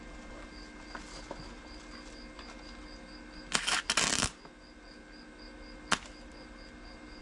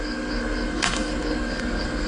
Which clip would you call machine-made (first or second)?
second